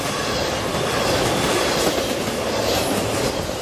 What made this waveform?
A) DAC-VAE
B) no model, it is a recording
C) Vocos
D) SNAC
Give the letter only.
B